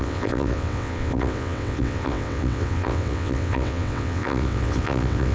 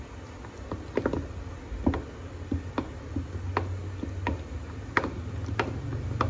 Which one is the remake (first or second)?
first